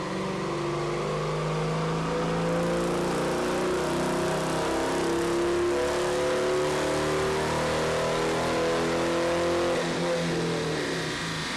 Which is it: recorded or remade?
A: recorded